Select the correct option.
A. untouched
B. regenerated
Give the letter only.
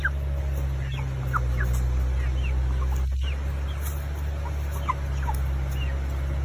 A